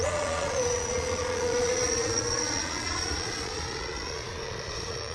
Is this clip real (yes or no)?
no